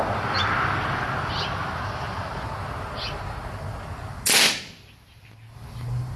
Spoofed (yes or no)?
no